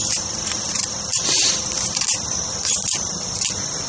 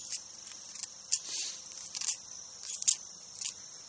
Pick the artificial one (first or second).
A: first